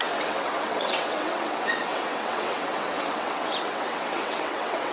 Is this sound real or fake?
fake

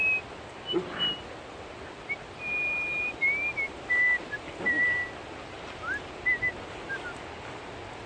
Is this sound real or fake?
real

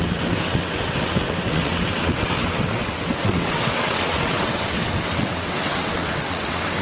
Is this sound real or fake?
fake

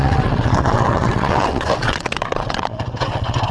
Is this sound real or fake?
fake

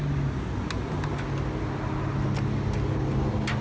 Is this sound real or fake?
real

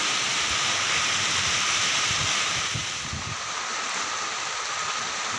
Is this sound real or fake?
real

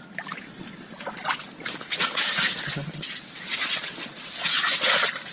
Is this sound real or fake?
real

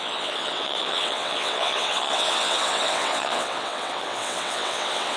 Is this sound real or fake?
fake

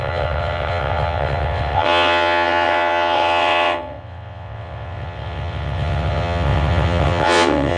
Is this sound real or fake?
fake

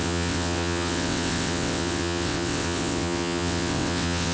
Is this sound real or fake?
fake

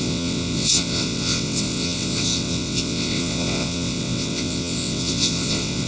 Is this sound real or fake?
fake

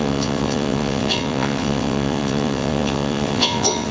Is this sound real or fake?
fake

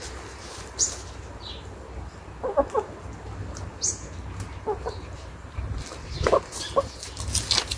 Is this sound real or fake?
real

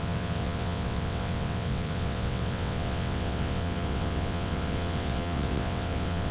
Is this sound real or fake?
fake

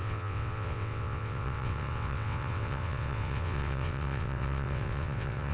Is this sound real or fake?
fake